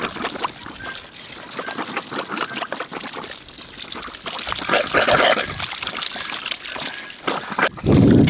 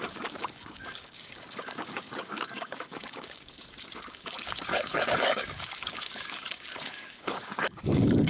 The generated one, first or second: second